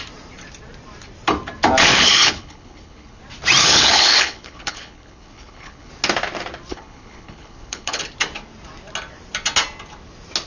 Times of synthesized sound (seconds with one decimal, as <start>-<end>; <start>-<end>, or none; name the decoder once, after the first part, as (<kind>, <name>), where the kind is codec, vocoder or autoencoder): 1.9-3.2 (codec, HILCodec); 3.6-5.9; 6.7-8.0